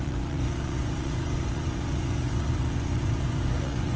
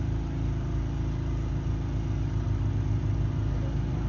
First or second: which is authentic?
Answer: second